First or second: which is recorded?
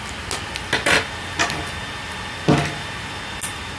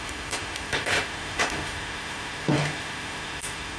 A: first